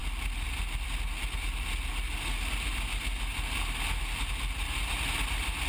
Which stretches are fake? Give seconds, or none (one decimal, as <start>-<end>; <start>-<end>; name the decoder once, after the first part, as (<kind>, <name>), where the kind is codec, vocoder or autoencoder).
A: none

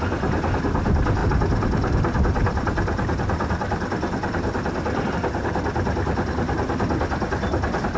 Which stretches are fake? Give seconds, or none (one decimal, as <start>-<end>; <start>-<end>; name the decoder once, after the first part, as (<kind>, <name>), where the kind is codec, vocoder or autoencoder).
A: none

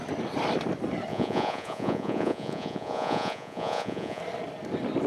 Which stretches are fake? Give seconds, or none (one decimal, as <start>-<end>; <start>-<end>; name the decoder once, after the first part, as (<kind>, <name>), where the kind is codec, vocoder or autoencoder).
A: 1.1-4.2 (vocoder, Vocos)

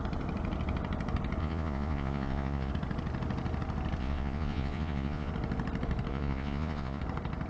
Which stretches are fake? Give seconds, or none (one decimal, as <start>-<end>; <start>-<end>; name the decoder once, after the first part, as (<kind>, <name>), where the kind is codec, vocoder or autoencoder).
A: 1.4-2.7 (vocoder, Vocos); 4.0-5.3; 6.1-7.0

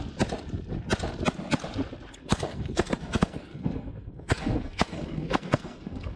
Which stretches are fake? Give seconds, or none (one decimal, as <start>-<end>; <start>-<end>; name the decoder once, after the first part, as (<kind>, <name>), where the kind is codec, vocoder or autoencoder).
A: 2.2-6.2 (codec, SNAC)

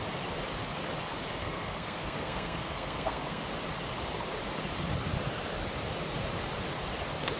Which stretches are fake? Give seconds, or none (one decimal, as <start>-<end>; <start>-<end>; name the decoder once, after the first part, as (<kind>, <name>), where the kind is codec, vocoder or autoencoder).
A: 1.4-3.4 (codec, SNAC)

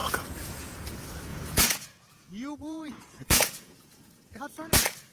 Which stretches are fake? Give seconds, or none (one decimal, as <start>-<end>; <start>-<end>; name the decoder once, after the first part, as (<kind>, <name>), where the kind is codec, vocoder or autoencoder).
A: 0.0-0.9 (vocoder, Vocos); 1.3-4.4